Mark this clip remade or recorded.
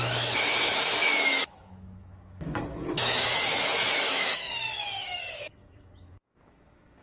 remade